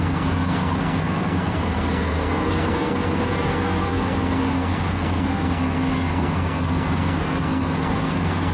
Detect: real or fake fake